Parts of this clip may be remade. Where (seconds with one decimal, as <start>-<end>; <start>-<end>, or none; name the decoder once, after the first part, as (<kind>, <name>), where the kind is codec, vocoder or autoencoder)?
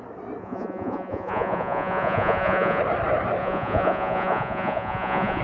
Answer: 0.4-2.8 (vocoder, Vocos); 3.4-5.4